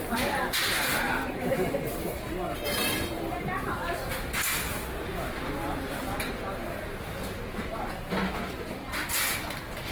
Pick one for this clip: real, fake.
real